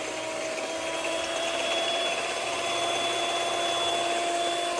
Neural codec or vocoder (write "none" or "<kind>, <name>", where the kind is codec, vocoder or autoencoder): none